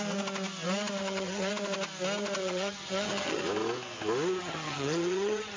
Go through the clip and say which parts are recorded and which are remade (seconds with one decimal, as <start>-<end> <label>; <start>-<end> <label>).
0.0-1.0 recorded; 1.0-1.5 remade; 1.5-2.4 recorded; 2.4-3.4 remade; 3.4-4.4 recorded; 4.4-5.6 remade